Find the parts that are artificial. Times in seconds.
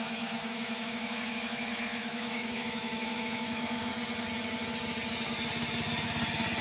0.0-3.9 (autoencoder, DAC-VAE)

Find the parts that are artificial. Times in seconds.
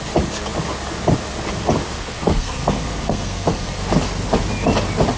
2.0-3.8 (codec, SNAC)